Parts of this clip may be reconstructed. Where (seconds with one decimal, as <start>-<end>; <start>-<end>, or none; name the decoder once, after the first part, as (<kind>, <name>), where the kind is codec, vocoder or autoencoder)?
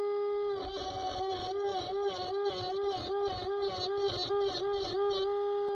none